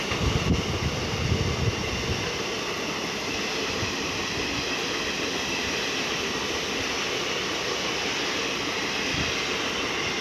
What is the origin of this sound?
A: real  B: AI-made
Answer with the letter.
A